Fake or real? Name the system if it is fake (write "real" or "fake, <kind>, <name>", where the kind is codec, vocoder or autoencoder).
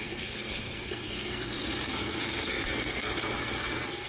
fake, codec, SNAC